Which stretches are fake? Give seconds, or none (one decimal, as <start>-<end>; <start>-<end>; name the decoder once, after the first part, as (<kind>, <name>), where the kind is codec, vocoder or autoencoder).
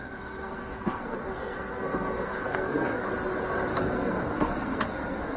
0.0-3.1 (codec, SNAC); 3.7-5.4